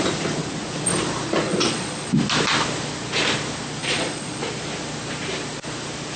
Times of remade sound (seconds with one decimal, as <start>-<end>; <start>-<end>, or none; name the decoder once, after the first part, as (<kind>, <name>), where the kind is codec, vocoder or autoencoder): 1.5-2.1 (vocoder, Vocos); 3.8-4.4